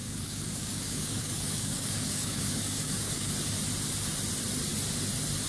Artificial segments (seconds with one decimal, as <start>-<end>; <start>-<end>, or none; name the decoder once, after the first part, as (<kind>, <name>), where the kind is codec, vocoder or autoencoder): 0.0-3.3 (codec, DAC)